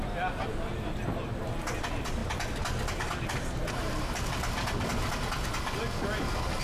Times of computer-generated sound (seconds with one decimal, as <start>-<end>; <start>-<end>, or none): none